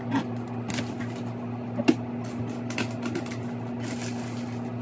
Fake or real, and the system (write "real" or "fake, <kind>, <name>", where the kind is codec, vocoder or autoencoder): real